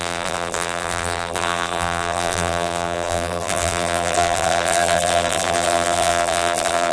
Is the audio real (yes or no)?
no